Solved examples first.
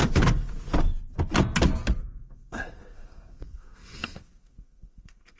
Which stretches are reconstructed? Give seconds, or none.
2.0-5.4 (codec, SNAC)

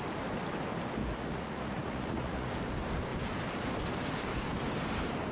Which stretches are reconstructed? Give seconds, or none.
1.0-2.5 (vocoder, Vocos)